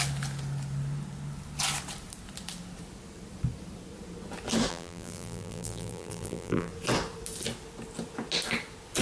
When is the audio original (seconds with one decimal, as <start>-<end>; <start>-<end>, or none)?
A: 0.0-4.7; 6.7-9.0